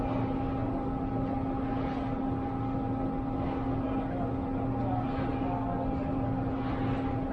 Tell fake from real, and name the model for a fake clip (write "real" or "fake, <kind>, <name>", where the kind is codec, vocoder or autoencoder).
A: real